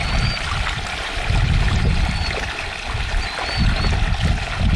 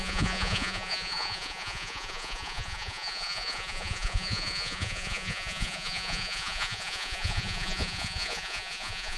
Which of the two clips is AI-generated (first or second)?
second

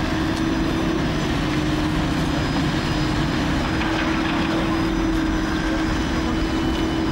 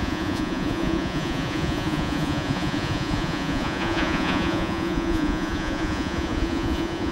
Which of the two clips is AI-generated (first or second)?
second